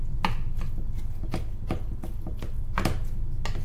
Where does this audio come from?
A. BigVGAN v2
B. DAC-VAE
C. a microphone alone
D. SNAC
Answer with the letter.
C